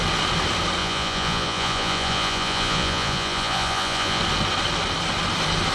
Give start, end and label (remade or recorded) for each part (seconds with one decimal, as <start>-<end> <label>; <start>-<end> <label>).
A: 0.0-0.8 recorded; 0.8-4.2 remade; 4.2-5.7 recorded